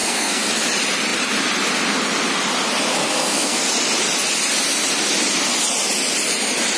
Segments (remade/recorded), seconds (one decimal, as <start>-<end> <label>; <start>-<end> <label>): 0.0-0.5 remade; 0.5-3.0 recorded; 3.0-3.7 remade; 3.7-6.8 recorded